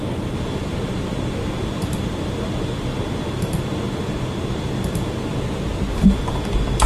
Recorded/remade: recorded